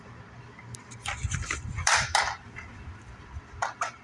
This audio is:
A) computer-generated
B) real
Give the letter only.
A